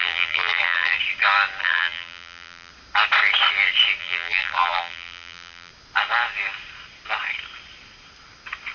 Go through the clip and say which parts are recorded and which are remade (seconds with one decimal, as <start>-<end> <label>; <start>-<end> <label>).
0.0-1.0 remade; 1.0-1.6 recorded; 1.6-2.7 remade; 2.7-4.0 recorded; 4.0-5.7 remade; 5.7-8.7 recorded